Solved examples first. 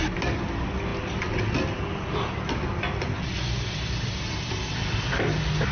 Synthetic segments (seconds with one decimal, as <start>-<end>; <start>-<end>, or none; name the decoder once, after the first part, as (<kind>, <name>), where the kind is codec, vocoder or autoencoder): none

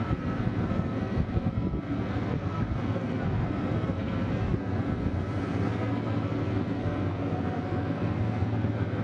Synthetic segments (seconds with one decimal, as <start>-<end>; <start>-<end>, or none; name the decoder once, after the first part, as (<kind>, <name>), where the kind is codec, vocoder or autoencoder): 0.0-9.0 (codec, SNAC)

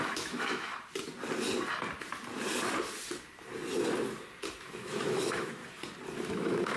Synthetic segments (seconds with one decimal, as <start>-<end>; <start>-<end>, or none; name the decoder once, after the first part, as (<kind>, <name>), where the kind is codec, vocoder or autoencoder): 0.0-0.7 (autoencoder, DAC-VAE); 4.6-5.6; 6.3-6.8